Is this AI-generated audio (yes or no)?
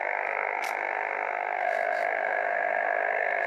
yes